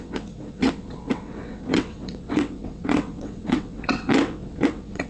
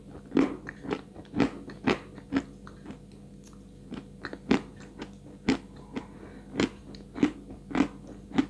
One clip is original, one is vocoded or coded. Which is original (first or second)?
second